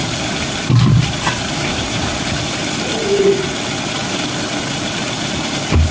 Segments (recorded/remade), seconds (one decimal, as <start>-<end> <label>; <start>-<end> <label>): 0.0-5.9 recorded